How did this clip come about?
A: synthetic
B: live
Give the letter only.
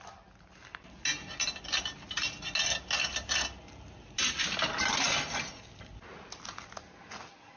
B